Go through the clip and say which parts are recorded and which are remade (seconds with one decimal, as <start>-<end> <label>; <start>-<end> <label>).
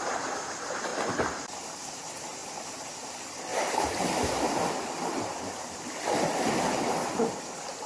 0.0-3.5 recorded; 3.5-4.6 remade; 4.6-7.9 recorded